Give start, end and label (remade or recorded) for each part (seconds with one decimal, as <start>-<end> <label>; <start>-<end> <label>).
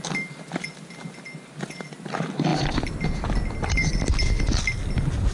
0.0-5.3 recorded